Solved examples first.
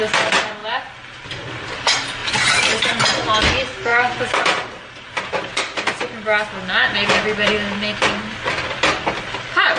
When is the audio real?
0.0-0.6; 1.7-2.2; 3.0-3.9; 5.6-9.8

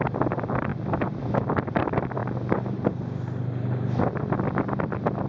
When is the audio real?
2.2-4.0

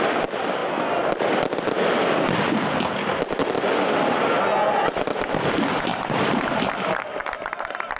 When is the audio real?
0.0-5.9

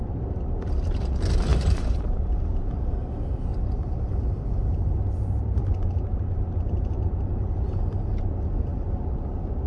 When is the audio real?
0.0-1.5; 3.1-3.5; 8.2-9.7